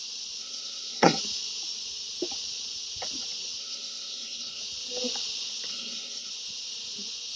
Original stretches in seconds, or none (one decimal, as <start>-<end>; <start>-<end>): 0.0-0.4; 1.2-3.6; 4.6-5.7; 6.3-7.4